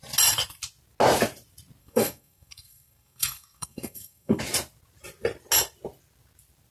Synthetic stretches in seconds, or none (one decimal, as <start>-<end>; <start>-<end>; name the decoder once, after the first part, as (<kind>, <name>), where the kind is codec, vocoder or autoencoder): 1.8-4.4 (codec, SNAC)